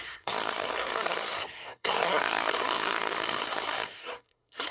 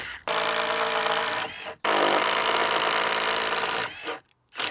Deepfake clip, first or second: first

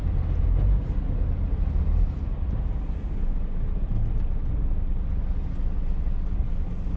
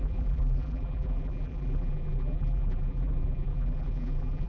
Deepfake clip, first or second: second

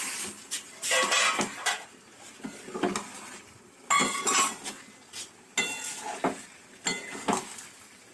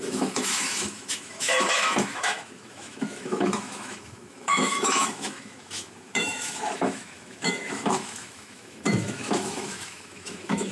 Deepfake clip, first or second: second